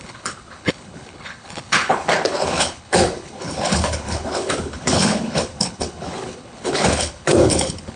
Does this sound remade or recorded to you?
remade